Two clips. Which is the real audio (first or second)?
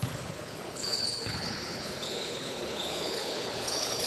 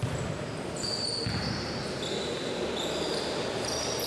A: second